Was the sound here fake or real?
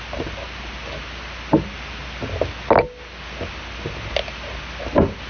real